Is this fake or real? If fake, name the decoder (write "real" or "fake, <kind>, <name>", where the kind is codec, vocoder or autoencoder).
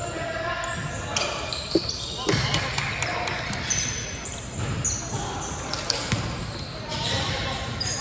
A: real